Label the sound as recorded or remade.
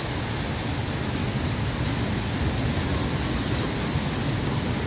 recorded